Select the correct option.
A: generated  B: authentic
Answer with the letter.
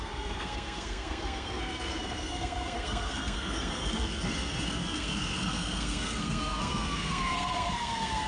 A